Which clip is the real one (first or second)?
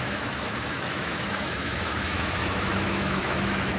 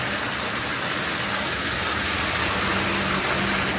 second